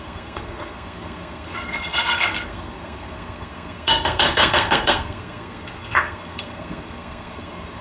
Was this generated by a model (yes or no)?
yes